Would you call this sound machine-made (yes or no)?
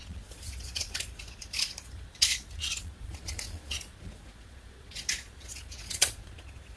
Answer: yes